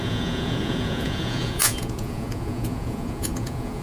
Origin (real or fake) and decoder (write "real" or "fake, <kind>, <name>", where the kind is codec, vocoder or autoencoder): fake, vocoder, Vocos